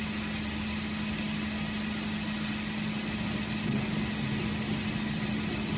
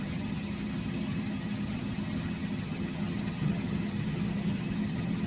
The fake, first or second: second